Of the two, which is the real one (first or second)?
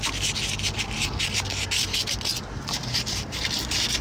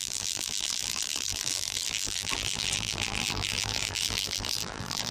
first